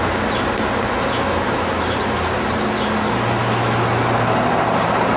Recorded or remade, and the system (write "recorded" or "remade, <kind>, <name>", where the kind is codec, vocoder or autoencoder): recorded